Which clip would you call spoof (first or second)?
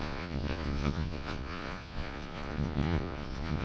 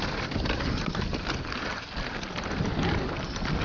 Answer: first